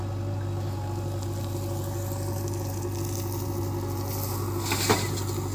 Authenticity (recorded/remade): recorded